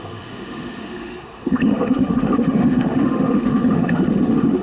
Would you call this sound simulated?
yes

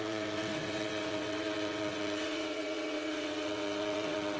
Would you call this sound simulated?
yes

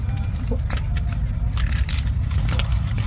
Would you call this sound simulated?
no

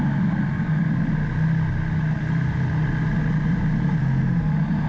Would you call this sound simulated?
no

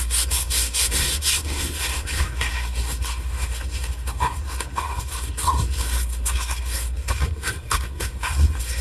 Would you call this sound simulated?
yes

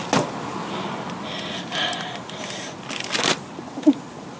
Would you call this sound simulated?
no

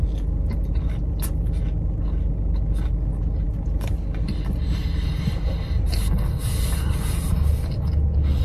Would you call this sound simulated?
no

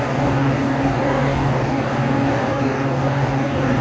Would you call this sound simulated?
yes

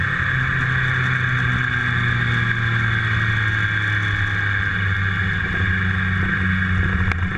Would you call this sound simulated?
no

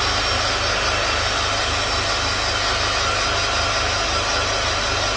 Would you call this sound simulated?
no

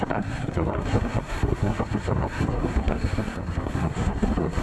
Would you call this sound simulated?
yes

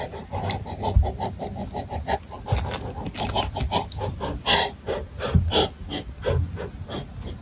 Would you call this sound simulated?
no